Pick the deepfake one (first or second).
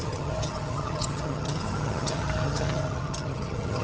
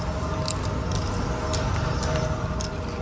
first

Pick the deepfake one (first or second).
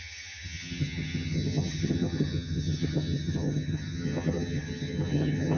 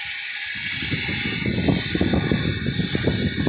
first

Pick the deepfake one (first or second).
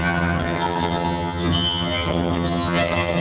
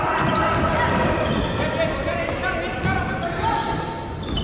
first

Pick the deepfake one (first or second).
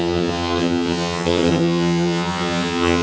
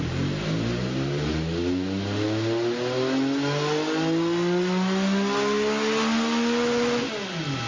first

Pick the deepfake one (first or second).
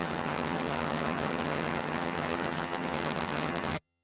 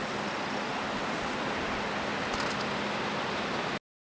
first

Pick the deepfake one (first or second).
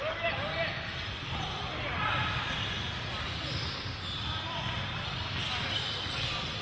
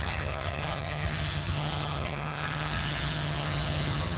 second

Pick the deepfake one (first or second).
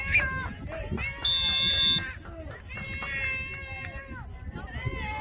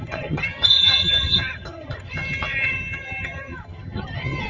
second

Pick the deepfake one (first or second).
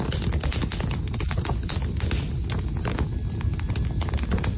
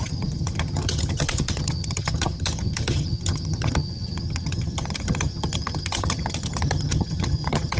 second